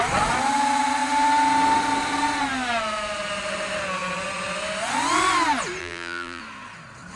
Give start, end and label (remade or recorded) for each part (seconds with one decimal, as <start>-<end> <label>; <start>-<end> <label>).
0.0-5.8 recorded; 5.8-6.4 remade; 6.4-7.2 recorded